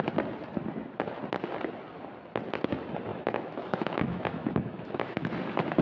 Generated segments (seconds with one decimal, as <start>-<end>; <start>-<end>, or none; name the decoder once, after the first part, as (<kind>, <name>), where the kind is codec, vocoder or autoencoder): 3.1-5.3 (autoencoder, DAC-VAE)